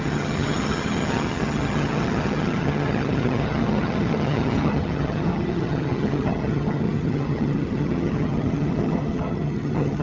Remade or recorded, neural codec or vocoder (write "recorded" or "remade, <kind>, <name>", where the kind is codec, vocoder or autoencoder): remade, vocoder, HiFi-GAN